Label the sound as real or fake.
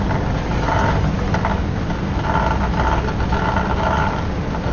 real